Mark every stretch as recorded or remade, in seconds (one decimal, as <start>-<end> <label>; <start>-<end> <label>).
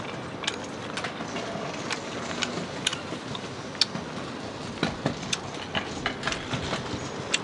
0.0-7.4 recorded